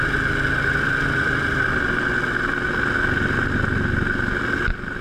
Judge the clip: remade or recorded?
recorded